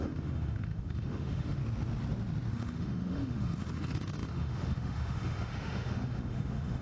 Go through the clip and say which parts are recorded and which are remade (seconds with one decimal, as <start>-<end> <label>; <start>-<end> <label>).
0.0-1.6 remade; 1.6-2.5 recorded; 2.5-6.8 remade